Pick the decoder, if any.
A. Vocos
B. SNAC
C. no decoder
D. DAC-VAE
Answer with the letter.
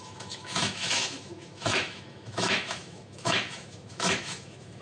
D